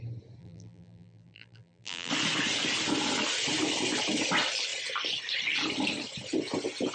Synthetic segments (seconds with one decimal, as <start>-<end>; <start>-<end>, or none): 0.4-2.1